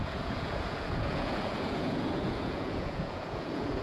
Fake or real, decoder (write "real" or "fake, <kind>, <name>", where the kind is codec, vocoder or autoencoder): fake, vocoder, Vocos